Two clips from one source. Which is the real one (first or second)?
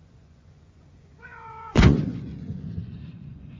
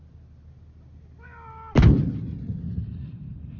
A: second